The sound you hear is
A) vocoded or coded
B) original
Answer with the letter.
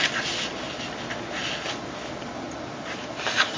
B